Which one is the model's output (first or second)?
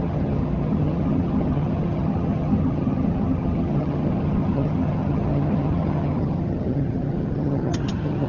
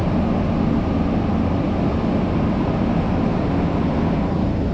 first